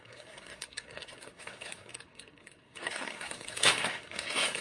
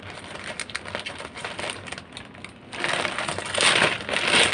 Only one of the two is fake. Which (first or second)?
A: first